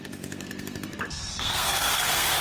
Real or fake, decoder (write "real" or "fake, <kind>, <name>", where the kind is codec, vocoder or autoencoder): fake, codec, SNAC